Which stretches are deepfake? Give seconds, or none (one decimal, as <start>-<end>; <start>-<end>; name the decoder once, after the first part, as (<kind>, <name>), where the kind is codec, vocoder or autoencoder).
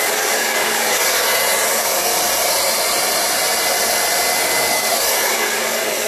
0.0-1.0 (codec, DAC); 1.7-2.1; 4.4-6.1